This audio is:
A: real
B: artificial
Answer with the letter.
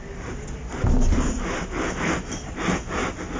A